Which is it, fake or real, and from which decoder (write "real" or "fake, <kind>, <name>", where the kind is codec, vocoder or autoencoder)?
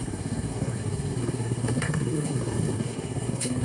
fake, codec, SNAC